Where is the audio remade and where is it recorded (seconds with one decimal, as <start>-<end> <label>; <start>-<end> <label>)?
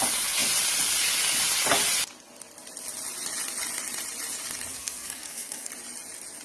0.0-4.7 recorded; 4.7-5.7 remade; 5.7-6.4 recorded